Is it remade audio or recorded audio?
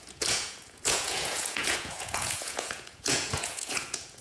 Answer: remade